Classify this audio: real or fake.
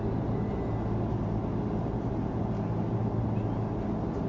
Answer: real